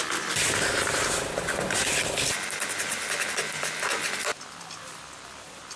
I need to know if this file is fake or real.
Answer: fake